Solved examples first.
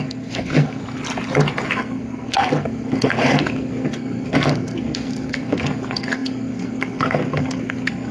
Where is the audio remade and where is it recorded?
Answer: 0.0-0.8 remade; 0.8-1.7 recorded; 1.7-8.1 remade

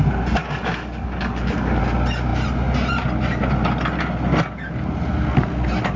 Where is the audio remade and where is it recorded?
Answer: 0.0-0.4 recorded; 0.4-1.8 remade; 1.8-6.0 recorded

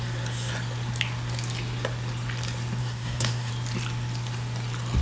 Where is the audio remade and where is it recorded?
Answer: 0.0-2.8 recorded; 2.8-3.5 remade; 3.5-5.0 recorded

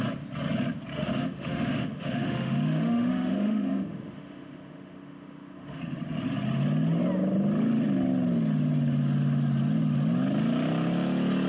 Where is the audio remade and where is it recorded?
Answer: 0.0-0.9 recorded; 0.9-5.8 remade; 5.8-11.5 recorded

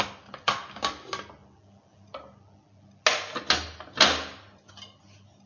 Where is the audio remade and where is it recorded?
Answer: 0.0-5.5 recorded

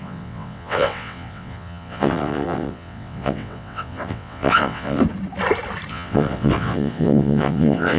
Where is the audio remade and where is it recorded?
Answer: 0.0-5.0 remade; 5.0-5.9 recorded; 5.9-8.0 remade

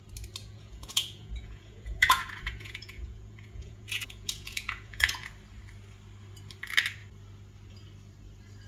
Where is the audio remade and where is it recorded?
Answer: 0.0-0.4 recorded; 0.4-5.3 remade; 5.3-8.7 recorded

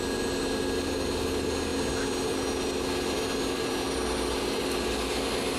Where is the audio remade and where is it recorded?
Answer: 0.0-5.6 recorded